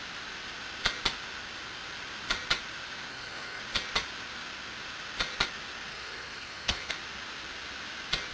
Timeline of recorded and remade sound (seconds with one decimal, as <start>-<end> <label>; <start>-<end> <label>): 0.0-3.1 recorded; 3.1-3.6 remade; 3.6-5.9 recorded; 5.9-6.9 remade; 6.9-8.3 recorded